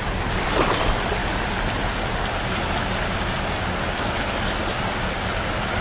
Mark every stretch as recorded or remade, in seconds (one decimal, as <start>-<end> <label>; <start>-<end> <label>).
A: 0.0-5.8 recorded